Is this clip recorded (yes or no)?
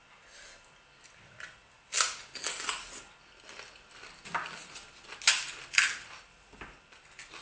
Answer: yes